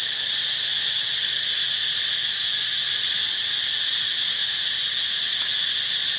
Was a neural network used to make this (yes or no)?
no